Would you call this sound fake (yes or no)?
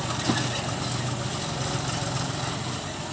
no